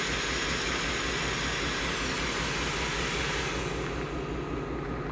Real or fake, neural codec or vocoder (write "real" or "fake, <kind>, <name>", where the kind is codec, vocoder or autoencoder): real